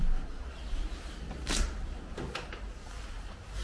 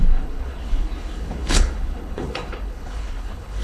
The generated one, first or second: second